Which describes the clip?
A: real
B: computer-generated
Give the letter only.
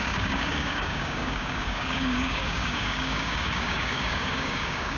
B